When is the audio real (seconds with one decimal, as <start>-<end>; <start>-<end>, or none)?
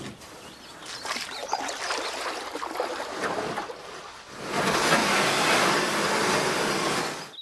0.0-7.4